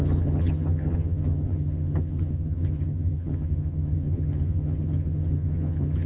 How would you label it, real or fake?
fake